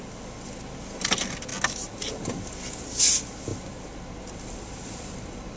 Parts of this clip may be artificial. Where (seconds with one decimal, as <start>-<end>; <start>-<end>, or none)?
none